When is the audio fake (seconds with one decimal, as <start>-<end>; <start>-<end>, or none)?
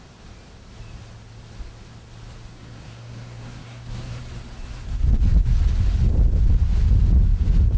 2.5-4.2